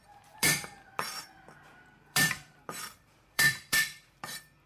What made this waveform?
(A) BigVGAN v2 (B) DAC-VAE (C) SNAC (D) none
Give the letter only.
A